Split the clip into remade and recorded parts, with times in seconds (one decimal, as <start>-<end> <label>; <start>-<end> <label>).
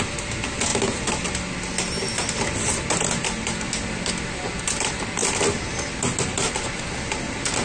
0.0-7.6 recorded